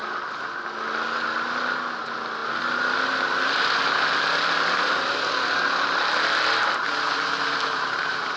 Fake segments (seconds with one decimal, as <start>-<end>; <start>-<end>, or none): none